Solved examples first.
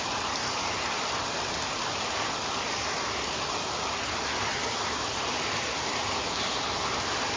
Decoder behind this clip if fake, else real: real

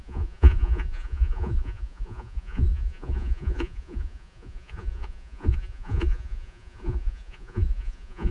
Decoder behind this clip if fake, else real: fake, vocoder, Vocos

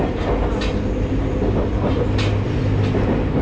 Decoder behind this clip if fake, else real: real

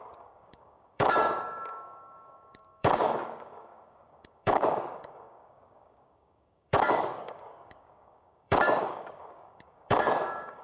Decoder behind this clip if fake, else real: fake, codec, DAC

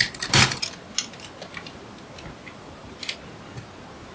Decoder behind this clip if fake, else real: real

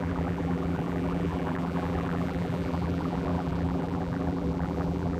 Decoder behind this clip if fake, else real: fake, vocoder, BigVGAN v2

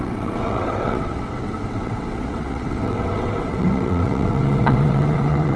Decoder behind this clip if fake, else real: fake, vocoder, WaveNeXt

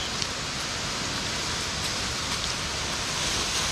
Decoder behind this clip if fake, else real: real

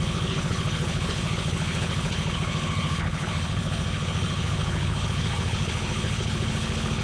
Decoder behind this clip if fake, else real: fake, codec, HILCodec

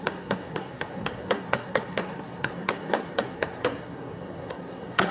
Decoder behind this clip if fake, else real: fake, codec, SNAC